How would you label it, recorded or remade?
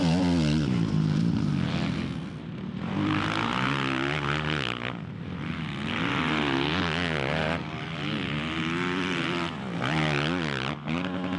recorded